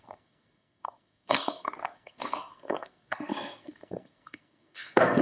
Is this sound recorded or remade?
remade